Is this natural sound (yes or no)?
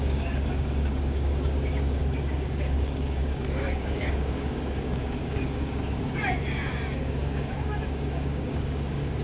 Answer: no